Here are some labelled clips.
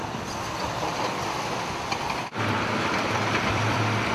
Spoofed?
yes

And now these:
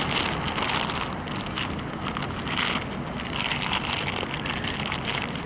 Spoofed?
no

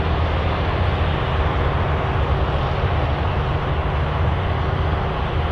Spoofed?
no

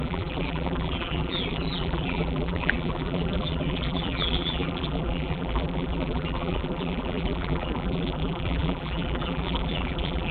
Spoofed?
yes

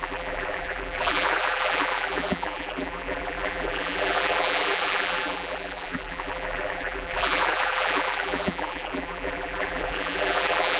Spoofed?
yes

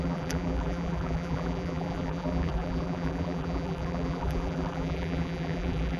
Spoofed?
yes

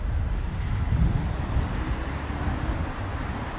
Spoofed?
no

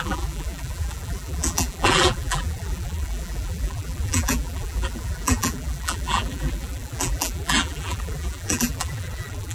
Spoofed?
yes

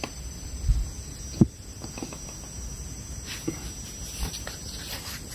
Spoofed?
no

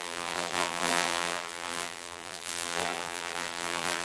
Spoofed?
yes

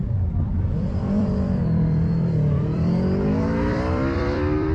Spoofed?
yes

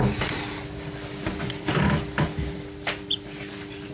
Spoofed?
no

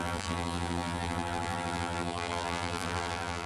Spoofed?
yes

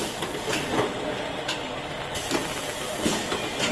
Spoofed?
no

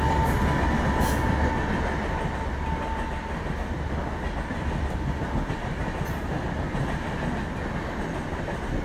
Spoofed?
no